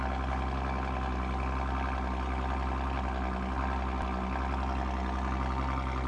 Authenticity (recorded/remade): recorded